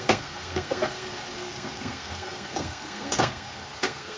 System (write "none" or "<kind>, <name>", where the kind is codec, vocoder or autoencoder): codec, SNAC